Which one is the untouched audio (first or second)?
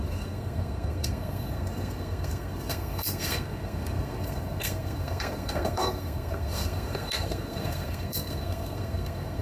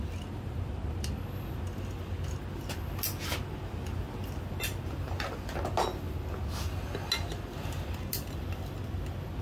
second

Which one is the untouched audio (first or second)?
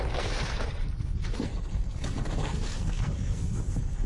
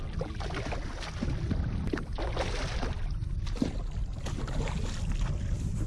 second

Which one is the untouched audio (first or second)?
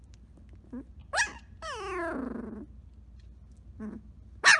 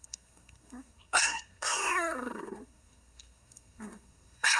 first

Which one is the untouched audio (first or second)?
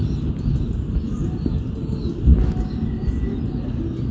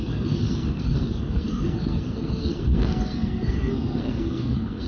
first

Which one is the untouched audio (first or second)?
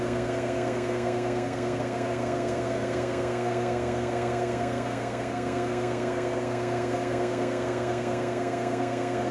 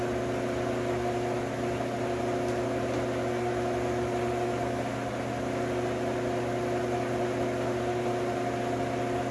second